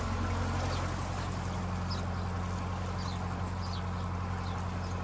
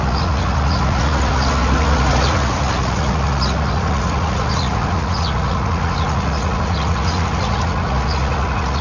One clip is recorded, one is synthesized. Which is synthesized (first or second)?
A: second